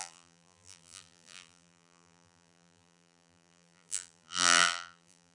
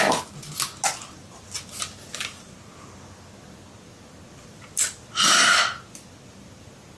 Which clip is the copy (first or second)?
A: first